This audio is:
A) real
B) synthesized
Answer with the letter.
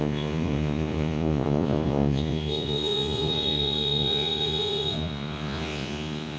B